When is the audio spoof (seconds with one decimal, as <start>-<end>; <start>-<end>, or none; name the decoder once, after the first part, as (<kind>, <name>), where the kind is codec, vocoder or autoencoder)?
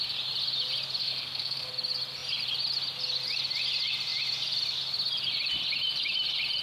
1.0-1.7 (codec, SNAC)